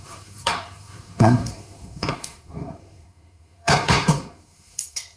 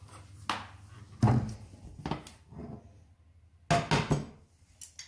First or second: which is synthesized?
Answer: first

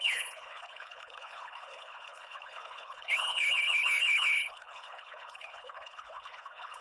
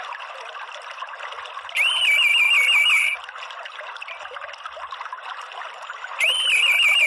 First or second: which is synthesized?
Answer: first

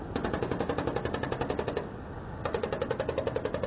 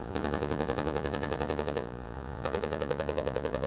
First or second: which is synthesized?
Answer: second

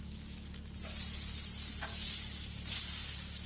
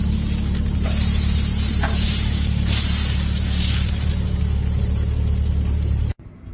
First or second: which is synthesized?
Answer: second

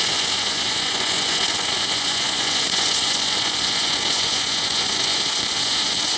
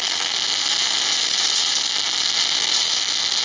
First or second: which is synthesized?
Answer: first